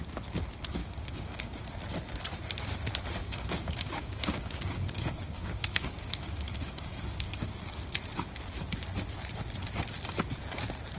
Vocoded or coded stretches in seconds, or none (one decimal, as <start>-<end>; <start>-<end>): 0.8-1.6; 3.2-7.5